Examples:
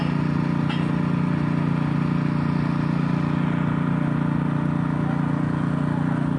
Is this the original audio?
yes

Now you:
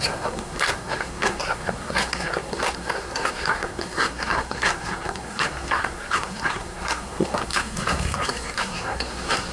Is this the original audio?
no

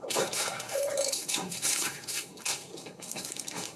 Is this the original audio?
no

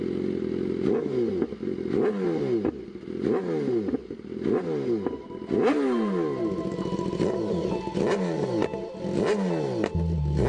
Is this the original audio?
yes